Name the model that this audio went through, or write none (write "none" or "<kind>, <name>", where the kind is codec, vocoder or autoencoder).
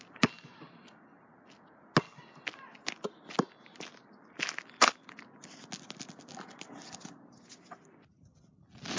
none